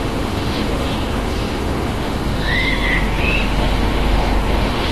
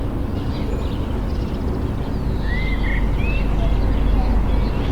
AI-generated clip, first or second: first